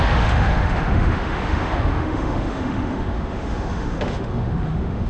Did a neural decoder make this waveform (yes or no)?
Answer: yes